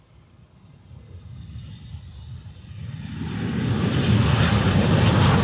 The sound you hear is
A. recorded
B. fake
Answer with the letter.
A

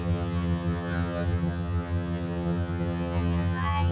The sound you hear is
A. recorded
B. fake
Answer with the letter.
B